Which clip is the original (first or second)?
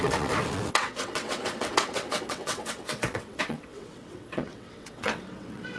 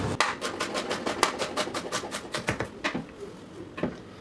second